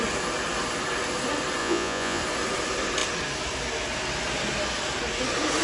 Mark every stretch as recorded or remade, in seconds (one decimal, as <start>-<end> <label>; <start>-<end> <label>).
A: 0.0-1.6 recorded; 1.6-2.2 remade; 2.2-5.6 recorded